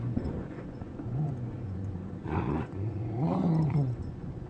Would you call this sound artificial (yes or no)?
yes